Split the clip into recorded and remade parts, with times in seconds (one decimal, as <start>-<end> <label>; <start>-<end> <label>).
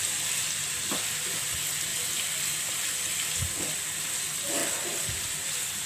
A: 0.0-5.9 recorded